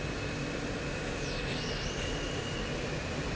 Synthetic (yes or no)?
no